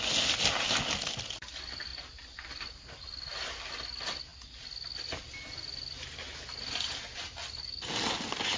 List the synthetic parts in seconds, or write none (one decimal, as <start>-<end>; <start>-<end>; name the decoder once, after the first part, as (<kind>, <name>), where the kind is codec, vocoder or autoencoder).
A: none